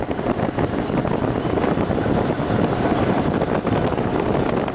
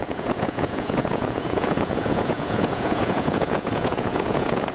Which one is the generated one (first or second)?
second